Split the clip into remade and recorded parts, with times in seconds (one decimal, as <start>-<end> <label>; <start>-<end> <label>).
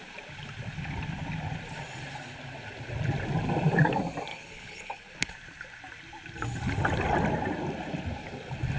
0.0-4.3 recorded; 4.3-5.3 remade; 5.3-8.8 recorded